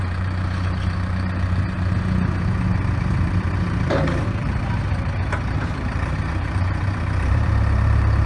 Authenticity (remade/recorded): remade